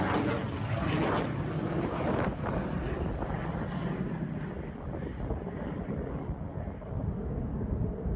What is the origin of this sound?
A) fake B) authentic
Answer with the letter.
B